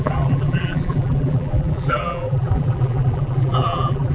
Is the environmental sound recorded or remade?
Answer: remade